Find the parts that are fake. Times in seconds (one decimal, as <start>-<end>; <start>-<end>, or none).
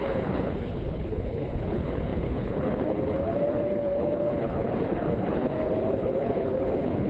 0.0-7.1